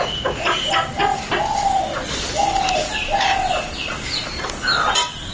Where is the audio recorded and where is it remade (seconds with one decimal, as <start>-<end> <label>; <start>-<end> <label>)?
0.0-5.3 recorded